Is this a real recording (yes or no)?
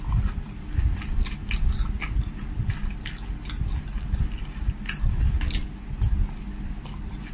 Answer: yes